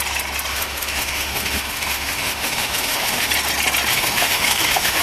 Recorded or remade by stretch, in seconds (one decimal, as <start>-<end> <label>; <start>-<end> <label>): 0.0-0.5 recorded; 0.5-3.3 remade; 3.3-3.9 recorded; 3.9-5.0 remade